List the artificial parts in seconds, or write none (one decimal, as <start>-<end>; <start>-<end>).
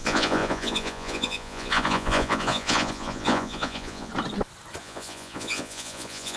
0.0-4.1; 4.8-6.4